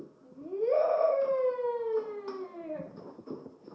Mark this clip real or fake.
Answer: real